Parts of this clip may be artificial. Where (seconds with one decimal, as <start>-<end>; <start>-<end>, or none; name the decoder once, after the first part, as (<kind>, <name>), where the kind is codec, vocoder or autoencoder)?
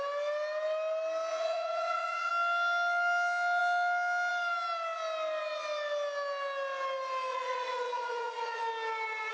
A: 1.3-2.3 (vocoder, Vocos); 7.3-8.6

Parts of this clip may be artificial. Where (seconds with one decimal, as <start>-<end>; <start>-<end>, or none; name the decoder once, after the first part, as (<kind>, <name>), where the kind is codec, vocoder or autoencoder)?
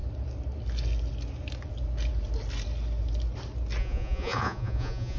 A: 3.8-5.2 (vocoder, Vocos)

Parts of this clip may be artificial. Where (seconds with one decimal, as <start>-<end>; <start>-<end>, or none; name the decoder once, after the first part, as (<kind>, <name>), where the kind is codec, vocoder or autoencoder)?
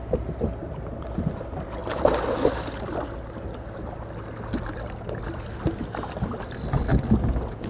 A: none